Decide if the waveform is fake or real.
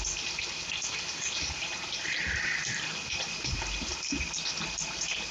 real